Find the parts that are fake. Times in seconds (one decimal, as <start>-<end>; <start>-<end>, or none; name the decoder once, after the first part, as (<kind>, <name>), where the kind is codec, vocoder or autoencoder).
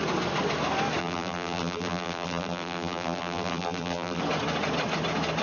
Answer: 1.0-4.2 (vocoder, BigVGAN v2)